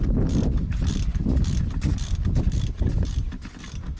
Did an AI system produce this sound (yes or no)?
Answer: no